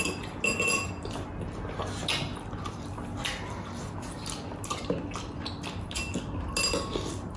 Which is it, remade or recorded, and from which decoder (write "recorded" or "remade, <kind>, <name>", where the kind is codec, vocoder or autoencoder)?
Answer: recorded